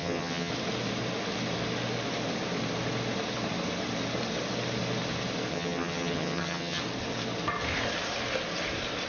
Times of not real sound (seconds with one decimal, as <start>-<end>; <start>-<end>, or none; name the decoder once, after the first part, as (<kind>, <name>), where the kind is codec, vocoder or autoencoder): 0.0-0.5 (vocoder, HiFi-GAN); 5.5-6.8